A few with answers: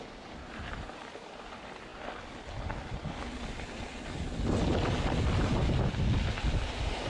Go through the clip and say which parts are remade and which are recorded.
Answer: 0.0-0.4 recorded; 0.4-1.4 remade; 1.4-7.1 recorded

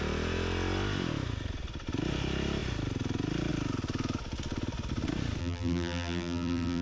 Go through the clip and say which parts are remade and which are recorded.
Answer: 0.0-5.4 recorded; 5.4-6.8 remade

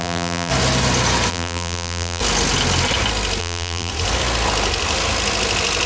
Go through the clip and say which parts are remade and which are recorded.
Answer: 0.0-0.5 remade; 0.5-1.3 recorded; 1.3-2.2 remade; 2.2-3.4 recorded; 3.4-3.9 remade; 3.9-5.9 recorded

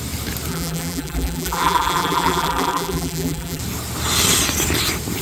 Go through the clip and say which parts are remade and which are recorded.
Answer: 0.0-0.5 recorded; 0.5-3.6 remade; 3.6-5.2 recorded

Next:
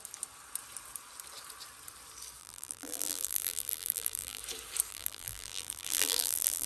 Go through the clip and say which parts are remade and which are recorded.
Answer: 0.0-2.4 recorded; 2.4-4.4 remade; 4.4-4.9 recorded; 4.9-6.7 remade